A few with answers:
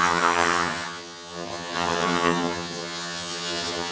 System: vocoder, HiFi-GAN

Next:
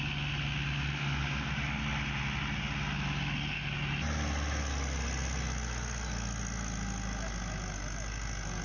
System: none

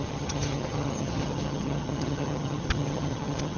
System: vocoder, HiFi-GAN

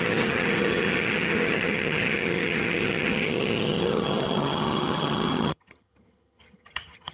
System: vocoder, HiFi-GAN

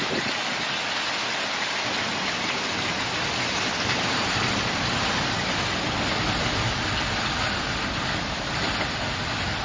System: none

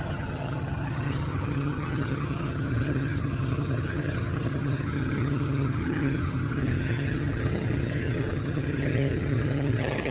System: vocoder, HiFi-GAN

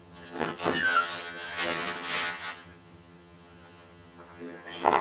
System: vocoder, HiFi-GAN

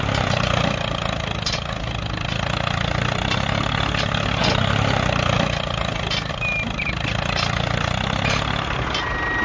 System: none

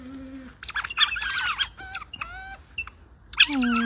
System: none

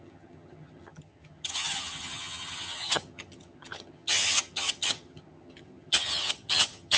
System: vocoder, HiFi-GAN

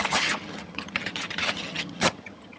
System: vocoder, HiFi-GAN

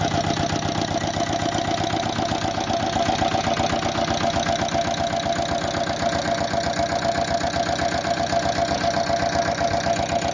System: none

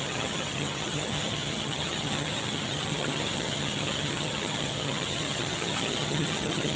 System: vocoder, HiFi-GAN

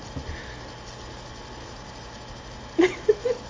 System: none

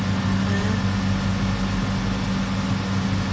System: none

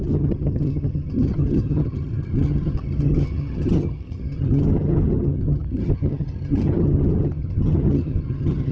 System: vocoder, HiFi-GAN